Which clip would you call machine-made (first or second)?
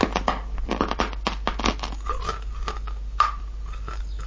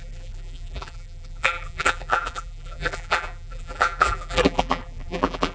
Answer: second